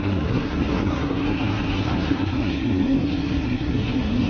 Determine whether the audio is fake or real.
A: fake